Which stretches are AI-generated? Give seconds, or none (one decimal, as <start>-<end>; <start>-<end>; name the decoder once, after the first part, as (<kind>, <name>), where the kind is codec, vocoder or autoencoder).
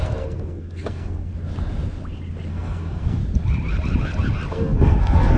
0.0-1.3 (codec, SNAC); 2.5-3.2; 4.5-5.4